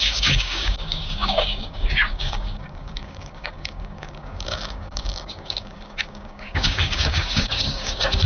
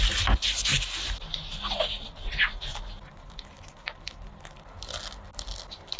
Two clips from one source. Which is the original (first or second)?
second